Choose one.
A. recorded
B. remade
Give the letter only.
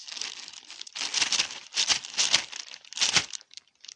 B